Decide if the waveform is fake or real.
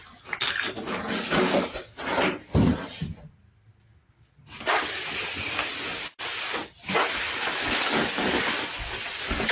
real